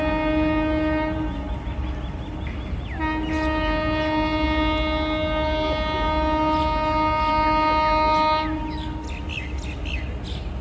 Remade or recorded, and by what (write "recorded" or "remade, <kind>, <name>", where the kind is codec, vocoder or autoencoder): recorded